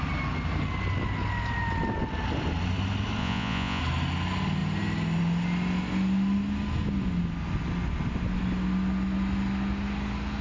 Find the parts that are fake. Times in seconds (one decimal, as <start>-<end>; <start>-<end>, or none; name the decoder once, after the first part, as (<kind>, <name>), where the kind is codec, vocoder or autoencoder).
3.2-3.8 (vocoder, Vocos)